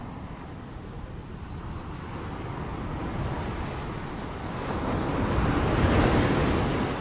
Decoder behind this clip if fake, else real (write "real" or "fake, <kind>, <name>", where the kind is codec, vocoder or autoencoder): real